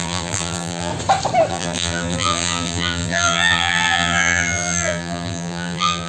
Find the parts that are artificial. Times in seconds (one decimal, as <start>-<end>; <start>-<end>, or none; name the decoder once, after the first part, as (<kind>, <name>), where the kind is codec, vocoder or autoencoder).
0.0-0.9 (vocoder, BigVGAN v2); 1.5-6.1